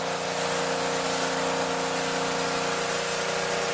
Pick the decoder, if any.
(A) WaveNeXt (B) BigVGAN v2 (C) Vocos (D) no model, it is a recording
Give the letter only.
D